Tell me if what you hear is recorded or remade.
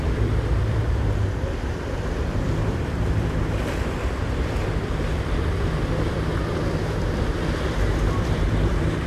remade